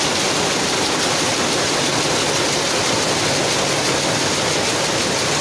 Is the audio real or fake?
real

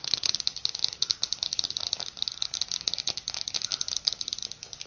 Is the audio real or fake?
fake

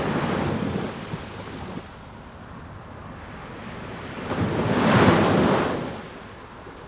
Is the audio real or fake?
fake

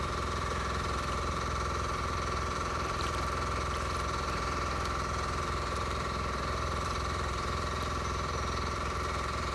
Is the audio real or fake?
fake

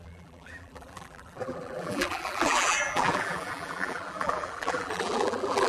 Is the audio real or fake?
fake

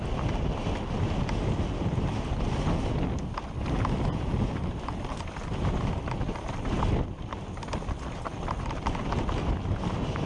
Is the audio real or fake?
real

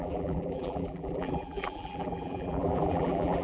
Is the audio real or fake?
fake